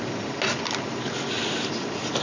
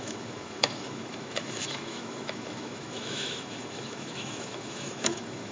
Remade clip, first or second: second